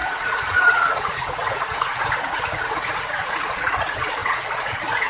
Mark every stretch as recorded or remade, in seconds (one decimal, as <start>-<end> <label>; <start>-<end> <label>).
0.0-5.1 remade